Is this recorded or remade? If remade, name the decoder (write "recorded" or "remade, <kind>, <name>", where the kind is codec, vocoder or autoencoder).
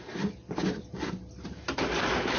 recorded